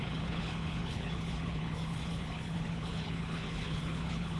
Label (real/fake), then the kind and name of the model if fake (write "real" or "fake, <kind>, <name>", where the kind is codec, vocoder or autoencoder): fake, codec, HILCodec